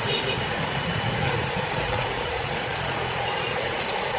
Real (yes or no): no